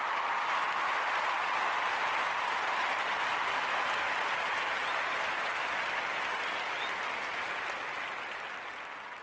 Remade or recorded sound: recorded